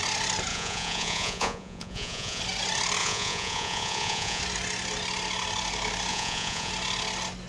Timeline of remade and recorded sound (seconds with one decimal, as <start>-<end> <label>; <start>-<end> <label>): 0.0-0.5 recorded; 0.5-2.4 remade; 2.4-3.0 recorded; 3.0-4.4 remade; 4.4-6.1 recorded; 6.1-6.7 remade; 6.7-7.5 recorded